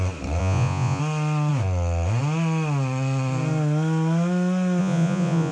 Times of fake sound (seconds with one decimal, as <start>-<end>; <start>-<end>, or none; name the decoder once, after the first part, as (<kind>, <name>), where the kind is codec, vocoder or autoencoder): 0.4-1.0 (vocoder, Vocos); 4.8-5.5